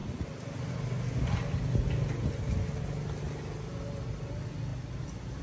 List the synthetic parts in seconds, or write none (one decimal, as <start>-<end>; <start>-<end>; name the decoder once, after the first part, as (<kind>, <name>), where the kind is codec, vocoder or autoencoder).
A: none